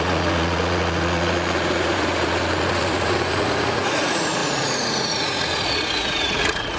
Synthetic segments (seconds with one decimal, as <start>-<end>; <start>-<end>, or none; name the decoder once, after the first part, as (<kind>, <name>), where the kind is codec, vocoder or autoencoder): 0.0-6.8 (vocoder, Vocos)